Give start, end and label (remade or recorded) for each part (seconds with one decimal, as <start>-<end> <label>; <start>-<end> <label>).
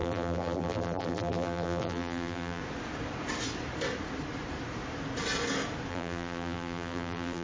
0.0-2.6 remade; 2.6-5.9 recorded; 5.9-7.4 remade